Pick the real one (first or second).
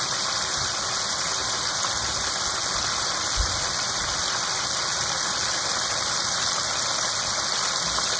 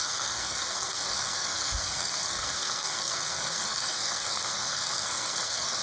first